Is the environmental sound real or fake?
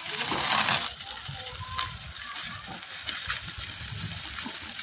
fake